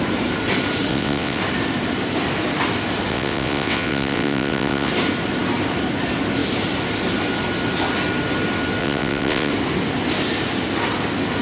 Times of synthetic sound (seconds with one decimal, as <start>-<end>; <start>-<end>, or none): 0.9-1.4; 3.1-4.9; 8.8-9.5